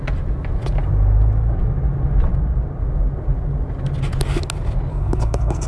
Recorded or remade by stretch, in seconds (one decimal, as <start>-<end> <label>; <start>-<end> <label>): 0.0-4.9 recorded; 4.9-5.7 remade